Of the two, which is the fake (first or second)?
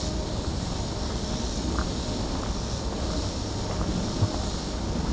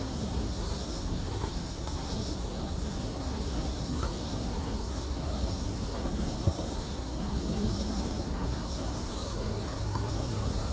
second